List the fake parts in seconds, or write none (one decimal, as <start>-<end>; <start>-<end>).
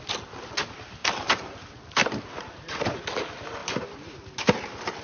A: 1.0-1.6; 3.6-4.2